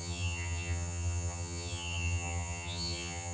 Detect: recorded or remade remade